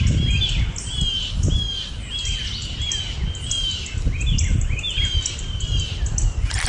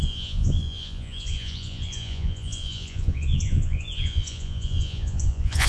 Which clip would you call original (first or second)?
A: first